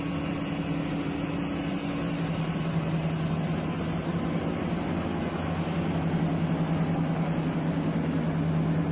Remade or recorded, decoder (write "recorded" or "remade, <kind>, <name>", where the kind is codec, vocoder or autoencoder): recorded